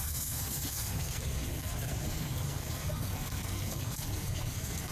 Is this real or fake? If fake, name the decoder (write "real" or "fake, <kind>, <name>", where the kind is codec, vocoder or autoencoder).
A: fake, codec, SNAC